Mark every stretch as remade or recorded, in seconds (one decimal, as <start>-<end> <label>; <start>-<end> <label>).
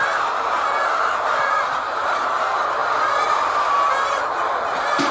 0.0-5.1 recorded